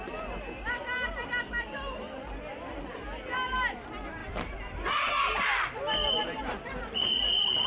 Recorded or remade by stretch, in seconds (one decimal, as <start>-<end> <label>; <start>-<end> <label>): 0.0-4.2 recorded; 4.2-5.1 remade; 5.1-6.2 recorded; 6.2-7.7 remade